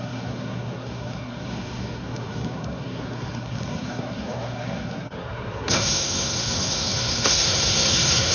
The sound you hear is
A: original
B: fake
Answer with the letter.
B